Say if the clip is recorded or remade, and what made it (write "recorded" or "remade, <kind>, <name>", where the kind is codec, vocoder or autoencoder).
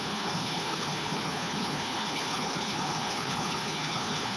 remade, codec, HILCodec